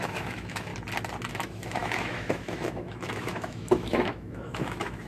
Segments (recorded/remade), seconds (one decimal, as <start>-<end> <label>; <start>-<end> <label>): 0.0-0.7 remade; 0.7-1.3 recorded; 1.3-5.1 remade